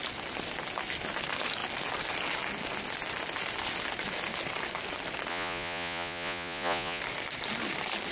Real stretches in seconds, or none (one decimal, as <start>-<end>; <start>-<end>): 0.0-5.3; 7.0-8.1